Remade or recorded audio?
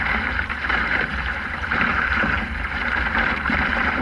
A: remade